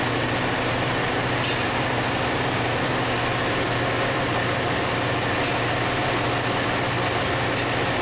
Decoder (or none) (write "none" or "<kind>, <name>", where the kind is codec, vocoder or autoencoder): none